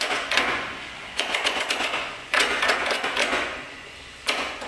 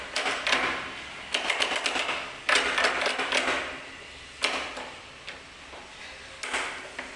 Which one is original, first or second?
second